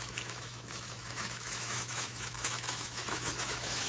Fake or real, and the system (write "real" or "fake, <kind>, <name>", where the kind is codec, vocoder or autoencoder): fake, autoencoder, DAC-VAE